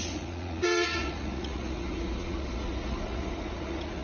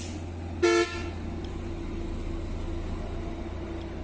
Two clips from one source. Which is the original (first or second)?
second